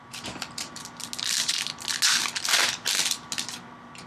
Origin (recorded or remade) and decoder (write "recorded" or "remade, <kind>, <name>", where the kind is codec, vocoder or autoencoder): recorded